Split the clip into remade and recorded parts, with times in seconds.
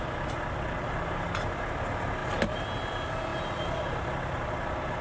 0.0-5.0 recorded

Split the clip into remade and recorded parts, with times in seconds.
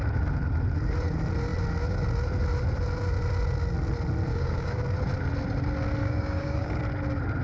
0.0-4.3 recorded; 4.3-4.8 remade; 4.8-6.0 recorded; 6.0-6.8 remade; 6.8-7.4 recorded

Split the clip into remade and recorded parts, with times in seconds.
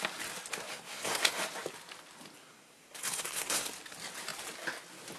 0.0-0.7 recorded; 0.7-1.4 remade; 1.4-2.4 recorded; 2.4-3.7 remade; 3.7-5.2 recorded